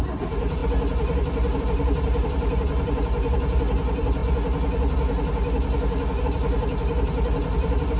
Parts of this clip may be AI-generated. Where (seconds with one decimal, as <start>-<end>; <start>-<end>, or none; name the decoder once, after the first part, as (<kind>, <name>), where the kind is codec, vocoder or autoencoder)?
0.0-0.6 (vocoder, BigVGAN v2); 1.6-4.2; 6.2-8.0